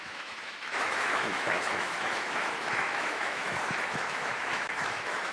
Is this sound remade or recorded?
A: remade